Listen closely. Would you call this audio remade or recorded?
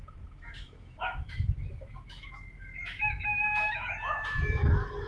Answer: remade